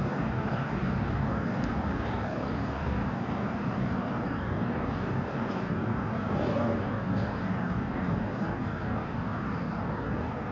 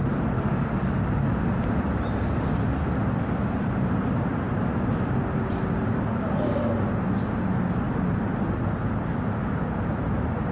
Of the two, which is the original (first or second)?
second